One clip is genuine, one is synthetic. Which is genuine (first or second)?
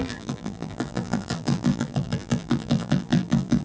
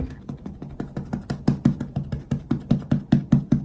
second